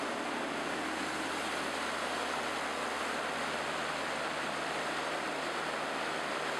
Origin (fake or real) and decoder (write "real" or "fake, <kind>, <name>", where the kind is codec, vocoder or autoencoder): real